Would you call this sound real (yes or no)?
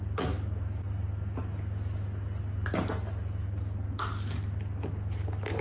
yes